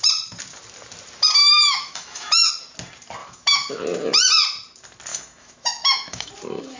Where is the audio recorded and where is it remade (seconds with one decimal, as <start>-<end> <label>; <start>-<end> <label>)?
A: 0.0-1.4 recorded; 1.4-2.5 remade; 2.5-3.2 recorded; 3.2-3.8 remade; 3.8-5.1 recorded; 5.1-6.3 remade; 6.3-6.8 recorded